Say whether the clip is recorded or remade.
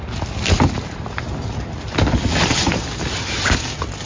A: recorded